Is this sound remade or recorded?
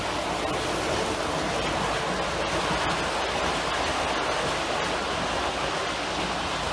recorded